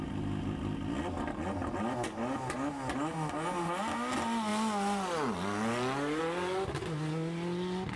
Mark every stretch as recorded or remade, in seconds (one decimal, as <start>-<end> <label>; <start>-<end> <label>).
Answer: 0.0-8.0 recorded